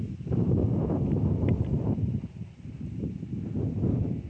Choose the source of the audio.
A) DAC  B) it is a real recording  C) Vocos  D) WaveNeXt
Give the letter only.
B